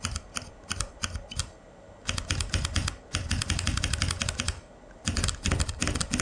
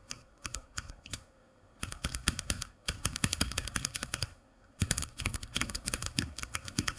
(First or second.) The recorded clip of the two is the first